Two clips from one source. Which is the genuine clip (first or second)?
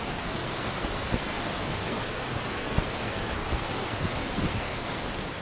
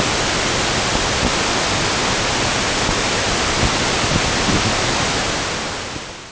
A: second